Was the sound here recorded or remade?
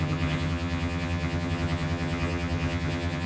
remade